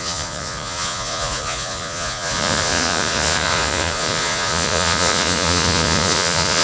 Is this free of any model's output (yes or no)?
no